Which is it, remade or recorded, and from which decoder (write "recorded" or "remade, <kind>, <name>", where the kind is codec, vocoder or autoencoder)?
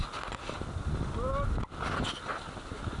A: recorded